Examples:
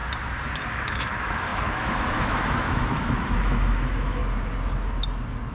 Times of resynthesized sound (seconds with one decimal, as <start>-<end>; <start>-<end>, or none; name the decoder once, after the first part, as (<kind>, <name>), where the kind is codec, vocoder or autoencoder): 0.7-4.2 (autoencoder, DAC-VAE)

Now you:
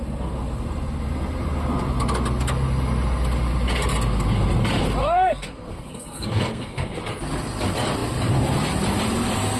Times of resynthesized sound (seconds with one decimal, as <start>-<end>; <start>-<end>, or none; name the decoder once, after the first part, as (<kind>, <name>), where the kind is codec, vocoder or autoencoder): 5.0-7.0 (codec, SNAC)

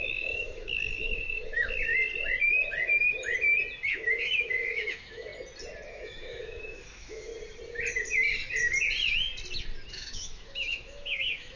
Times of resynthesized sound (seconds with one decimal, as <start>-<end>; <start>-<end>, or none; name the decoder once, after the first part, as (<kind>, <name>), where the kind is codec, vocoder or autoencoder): 0.0-1.9 (autoencoder, DAC-VAE); 3.9-5.3; 5.9-7.3; 9.9-11.6

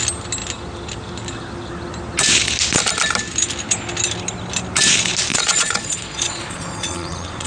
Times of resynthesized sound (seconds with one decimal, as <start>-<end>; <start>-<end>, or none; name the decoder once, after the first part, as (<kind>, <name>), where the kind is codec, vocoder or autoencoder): 5.3-7.5 (vocoder, Vocos)

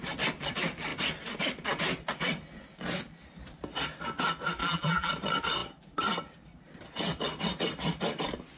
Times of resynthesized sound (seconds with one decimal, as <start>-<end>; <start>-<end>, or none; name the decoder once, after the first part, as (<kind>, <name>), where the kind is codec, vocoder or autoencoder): 4.6-5.1 (vocoder, BigVGAN v2)